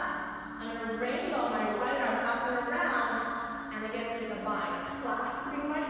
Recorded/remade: recorded